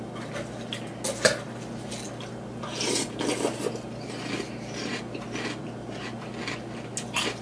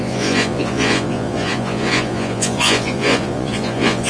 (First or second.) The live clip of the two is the first